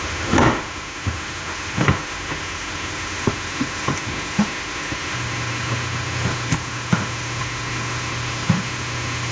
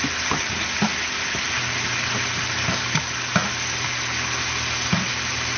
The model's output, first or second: first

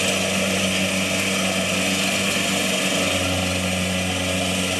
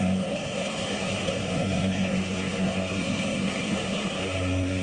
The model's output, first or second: second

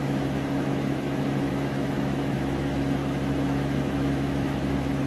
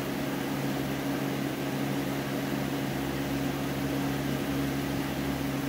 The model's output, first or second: first